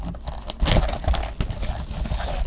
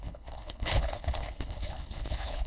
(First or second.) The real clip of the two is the first